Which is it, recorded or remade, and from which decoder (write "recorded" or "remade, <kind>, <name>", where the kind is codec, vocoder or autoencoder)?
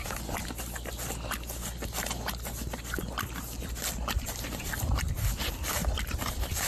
recorded